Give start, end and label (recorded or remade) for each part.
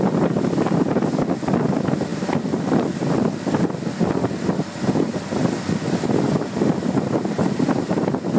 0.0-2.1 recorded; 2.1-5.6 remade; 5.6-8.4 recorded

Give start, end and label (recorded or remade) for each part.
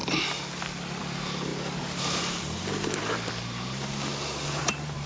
0.0-1.0 recorded; 1.0-1.5 remade; 1.5-4.6 recorded; 4.6-5.1 remade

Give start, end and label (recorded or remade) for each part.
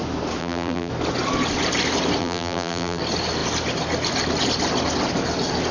0.0-0.4 recorded; 0.4-0.9 remade; 0.9-2.2 recorded; 2.2-3.0 remade; 3.0-5.7 recorded